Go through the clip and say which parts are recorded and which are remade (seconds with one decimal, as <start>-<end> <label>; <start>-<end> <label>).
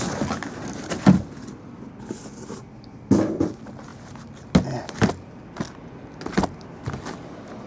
0.0-7.7 recorded